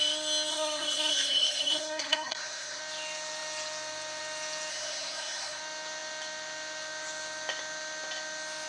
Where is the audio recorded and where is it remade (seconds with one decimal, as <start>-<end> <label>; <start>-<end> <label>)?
0.0-0.5 recorded; 0.5-2.8 remade; 2.8-4.7 recorded; 4.7-5.6 remade; 5.6-8.7 recorded